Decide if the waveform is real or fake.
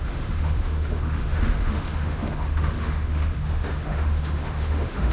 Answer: fake